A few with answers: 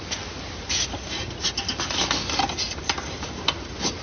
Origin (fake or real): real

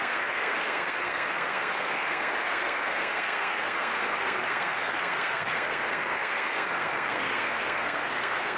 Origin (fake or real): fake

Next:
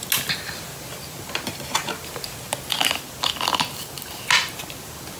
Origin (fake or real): real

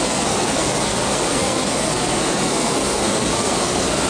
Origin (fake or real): fake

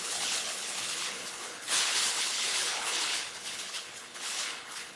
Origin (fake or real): fake